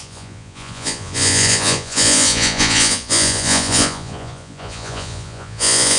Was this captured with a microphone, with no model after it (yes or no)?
no